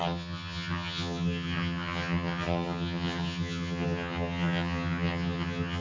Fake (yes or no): yes